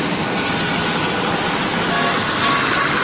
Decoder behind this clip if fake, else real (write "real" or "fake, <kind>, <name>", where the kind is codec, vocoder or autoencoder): real